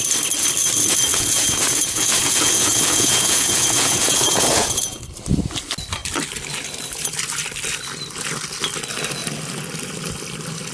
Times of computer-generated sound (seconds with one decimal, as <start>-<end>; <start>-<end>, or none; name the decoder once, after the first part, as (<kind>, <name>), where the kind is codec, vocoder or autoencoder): 1.1-5.0 (vocoder, Vocos)